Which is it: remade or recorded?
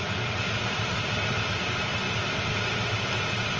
remade